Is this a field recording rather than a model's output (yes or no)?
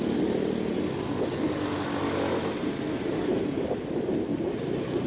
yes